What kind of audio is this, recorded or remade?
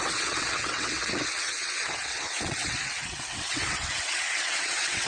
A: remade